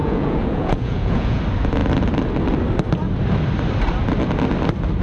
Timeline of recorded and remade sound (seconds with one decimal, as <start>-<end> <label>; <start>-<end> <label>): 0.0-1.4 remade; 1.4-5.0 recorded